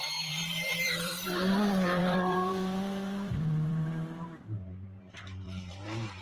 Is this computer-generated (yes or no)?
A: yes